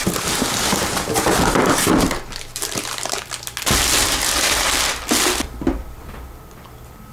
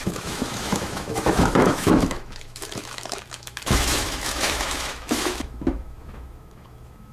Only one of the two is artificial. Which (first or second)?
second